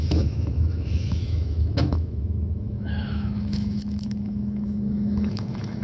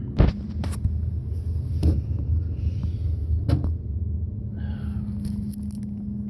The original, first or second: second